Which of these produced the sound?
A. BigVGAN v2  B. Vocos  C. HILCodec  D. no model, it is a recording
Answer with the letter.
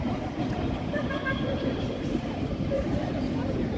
A